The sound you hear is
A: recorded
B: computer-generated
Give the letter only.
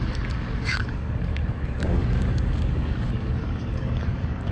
B